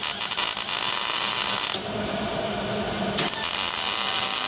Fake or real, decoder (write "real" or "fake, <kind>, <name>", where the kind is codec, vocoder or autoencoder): real